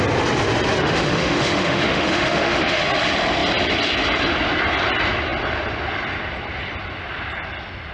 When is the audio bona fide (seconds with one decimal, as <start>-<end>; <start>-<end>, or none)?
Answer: 0.0-0.8; 2.8-7.9